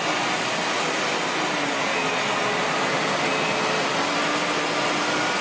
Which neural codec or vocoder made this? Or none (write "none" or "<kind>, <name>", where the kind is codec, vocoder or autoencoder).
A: none